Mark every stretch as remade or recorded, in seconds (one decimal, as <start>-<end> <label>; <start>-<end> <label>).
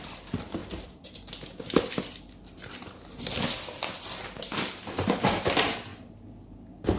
0.0-0.6 remade; 0.6-4.7 recorded; 4.7-5.9 remade; 5.9-7.0 recorded